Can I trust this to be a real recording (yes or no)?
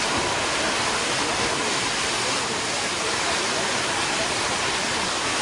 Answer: yes